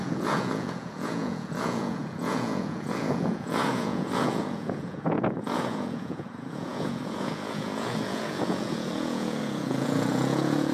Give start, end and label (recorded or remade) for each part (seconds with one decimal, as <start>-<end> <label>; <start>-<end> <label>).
0.0-10.7 remade